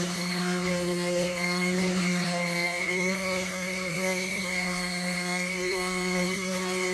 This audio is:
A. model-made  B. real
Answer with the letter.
A